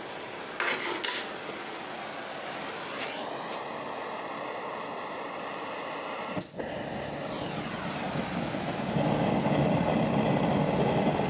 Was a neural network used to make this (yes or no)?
no